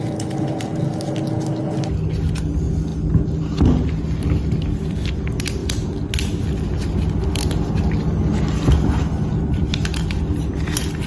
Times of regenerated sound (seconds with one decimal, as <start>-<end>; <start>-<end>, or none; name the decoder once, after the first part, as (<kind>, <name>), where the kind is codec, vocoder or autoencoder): none